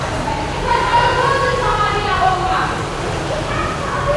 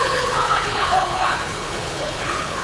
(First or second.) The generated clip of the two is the second